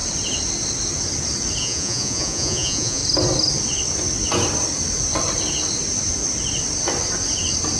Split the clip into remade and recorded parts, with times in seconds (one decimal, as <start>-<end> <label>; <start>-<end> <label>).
0.0-1.6 recorded; 1.6-3.0 remade; 3.0-7.8 recorded